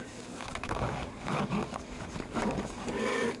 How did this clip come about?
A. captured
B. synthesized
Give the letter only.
B